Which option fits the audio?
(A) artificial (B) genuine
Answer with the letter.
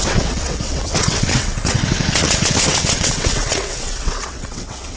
A